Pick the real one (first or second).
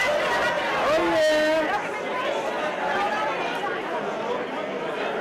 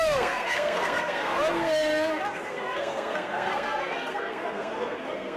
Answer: first